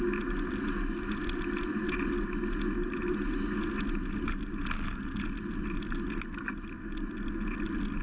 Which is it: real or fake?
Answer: real